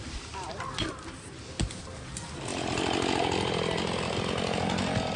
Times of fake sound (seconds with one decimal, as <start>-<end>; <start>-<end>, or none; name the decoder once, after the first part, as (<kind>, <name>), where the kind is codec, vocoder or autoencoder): none